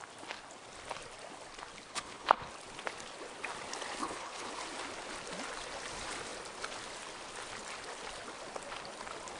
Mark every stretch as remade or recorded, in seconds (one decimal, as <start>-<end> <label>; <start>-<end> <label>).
0.0-1.9 recorded; 1.9-2.5 remade; 2.5-4.0 recorded; 4.0-4.5 remade; 4.5-9.4 recorded